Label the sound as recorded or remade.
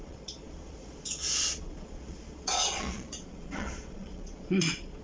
remade